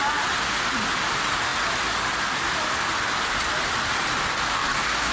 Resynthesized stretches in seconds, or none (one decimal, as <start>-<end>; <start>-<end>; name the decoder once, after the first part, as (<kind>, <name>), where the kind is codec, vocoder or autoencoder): 4.5-5.1 (codec, DAC)